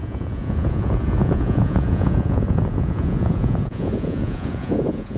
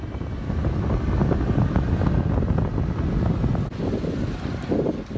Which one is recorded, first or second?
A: second